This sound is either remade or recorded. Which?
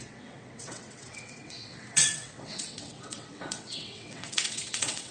remade